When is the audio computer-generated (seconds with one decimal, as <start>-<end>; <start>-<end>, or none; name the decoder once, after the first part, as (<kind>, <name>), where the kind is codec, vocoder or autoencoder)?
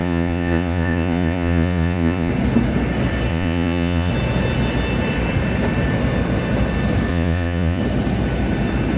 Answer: 0.0-2.3 (vocoder, Vocos); 3.3-4.1; 7.1-7.8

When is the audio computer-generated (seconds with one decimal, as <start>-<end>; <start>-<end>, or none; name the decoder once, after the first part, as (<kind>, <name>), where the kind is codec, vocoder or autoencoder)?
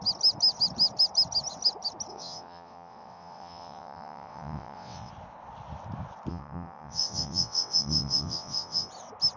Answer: 2.1-5.1 (vocoder, WaveNeXt); 6.3-8.9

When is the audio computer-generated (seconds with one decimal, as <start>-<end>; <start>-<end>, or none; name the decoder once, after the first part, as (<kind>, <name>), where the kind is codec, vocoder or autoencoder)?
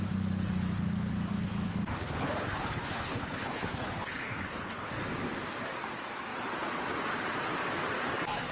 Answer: 1.9-4.9 (codec, HILCodec)